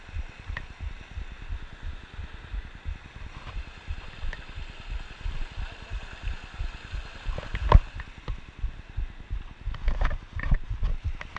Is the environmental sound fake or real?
real